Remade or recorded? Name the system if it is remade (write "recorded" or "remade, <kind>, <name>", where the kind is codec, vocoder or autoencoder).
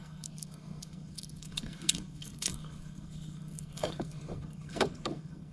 remade, codec, SNAC